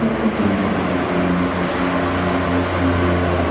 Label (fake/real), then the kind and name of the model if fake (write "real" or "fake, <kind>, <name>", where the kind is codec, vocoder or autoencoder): real